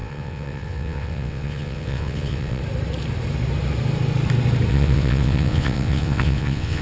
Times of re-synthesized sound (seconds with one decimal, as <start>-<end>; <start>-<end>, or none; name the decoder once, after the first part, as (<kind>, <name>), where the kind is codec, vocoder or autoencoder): 0.0-2.6 (vocoder, WaveNeXt); 4.7-6.8